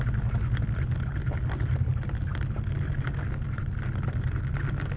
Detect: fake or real real